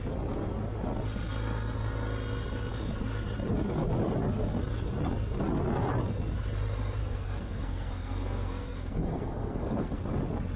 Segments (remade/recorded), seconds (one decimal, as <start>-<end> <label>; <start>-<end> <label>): 0.0-7.0 recorded; 7.0-10.0 remade; 10.0-10.6 recorded